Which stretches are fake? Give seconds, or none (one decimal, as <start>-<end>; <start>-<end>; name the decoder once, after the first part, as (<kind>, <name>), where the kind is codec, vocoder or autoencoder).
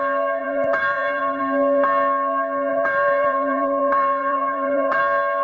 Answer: 0.4-1.4 (vocoder, BigVGAN v2); 2.7-5.0